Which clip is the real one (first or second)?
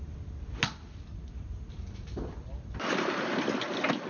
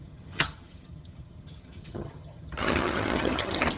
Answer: first